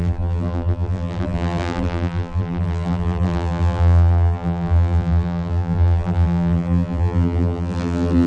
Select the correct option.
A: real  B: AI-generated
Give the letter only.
B